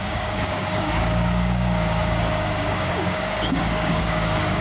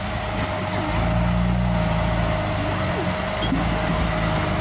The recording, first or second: second